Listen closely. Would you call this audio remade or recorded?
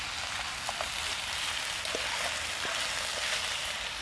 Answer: recorded